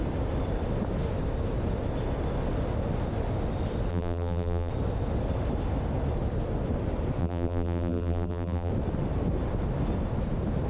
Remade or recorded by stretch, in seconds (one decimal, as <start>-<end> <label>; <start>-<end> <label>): 0.0-3.9 recorded; 3.9-4.7 remade; 4.7-7.2 recorded; 7.2-8.7 remade; 8.7-10.7 recorded